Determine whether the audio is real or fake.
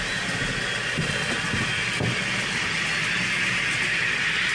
real